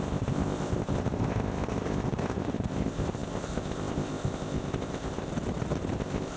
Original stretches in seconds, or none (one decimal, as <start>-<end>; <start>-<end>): 5.3-6.0